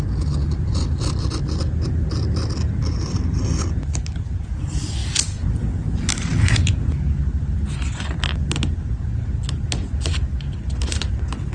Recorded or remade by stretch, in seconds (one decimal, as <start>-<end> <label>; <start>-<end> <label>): 0.0-11.5 recorded